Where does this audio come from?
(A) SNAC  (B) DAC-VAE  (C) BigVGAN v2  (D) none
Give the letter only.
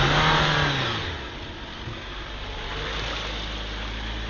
D